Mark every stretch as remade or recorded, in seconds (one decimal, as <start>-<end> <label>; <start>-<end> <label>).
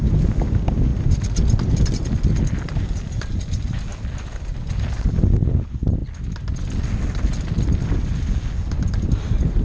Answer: 0.0-9.6 recorded